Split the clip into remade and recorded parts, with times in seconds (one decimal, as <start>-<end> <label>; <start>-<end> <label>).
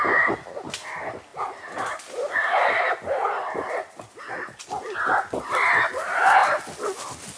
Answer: 0.0-1.3 recorded; 1.3-4.2 remade; 4.2-7.4 recorded